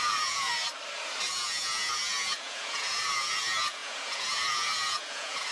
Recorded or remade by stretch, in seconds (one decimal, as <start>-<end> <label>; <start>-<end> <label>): 0.0-0.5 remade; 0.5-1.3 recorded; 1.3-5.5 remade